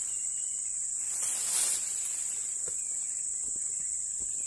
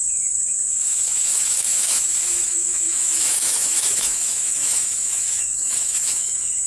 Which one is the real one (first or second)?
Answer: first